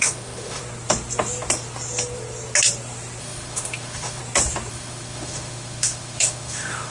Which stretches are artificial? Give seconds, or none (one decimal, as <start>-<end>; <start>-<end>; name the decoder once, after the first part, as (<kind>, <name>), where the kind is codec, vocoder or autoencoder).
0.0-0.6 (autoencoder, DAC-VAE); 3.2-4.2; 4.7-6.9